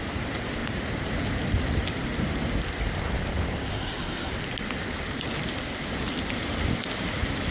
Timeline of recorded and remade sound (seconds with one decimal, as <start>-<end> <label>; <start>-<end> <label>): 0.0-3.6 recorded; 3.6-4.3 remade; 4.3-7.5 recorded